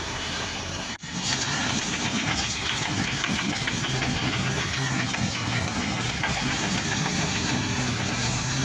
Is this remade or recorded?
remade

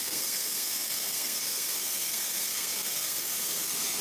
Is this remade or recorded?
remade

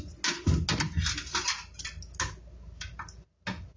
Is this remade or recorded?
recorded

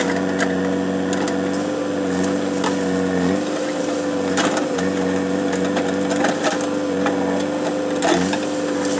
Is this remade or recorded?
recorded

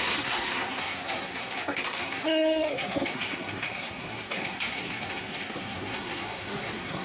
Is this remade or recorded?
remade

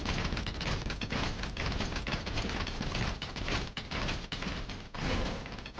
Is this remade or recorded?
recorded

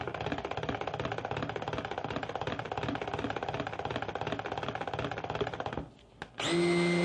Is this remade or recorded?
recorded